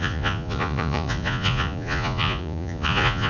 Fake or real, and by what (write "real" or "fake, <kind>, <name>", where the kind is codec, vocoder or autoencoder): fake, vocoder, Vocos